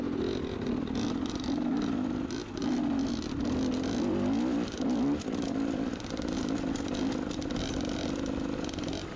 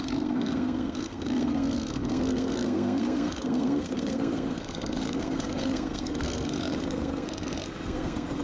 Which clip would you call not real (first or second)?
second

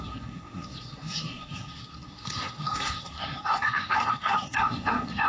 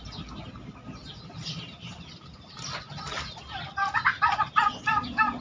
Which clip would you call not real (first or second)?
first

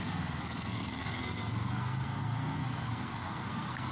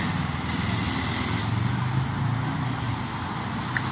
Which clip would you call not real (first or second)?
first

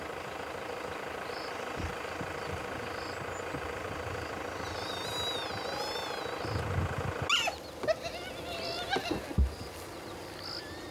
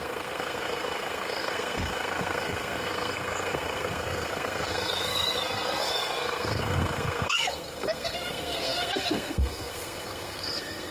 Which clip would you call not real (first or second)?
second